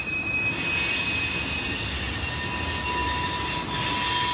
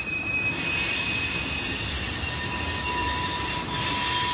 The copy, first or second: second